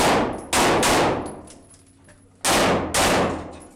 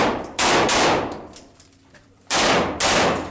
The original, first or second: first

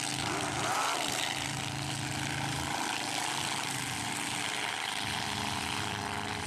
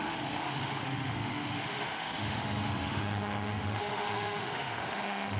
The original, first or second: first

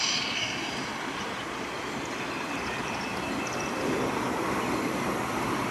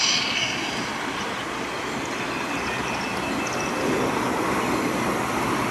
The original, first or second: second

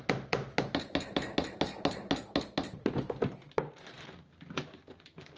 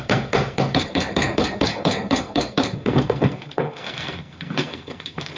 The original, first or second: first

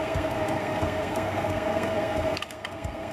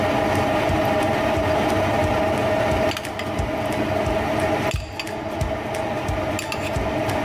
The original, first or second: second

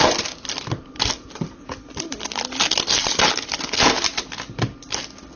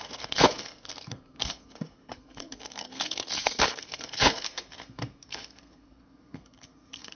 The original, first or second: first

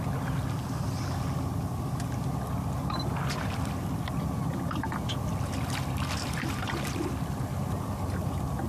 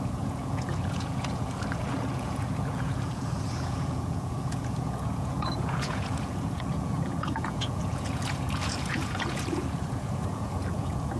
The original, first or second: first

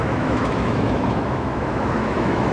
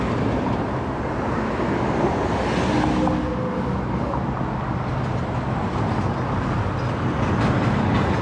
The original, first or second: second